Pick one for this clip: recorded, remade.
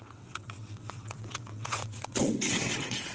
remade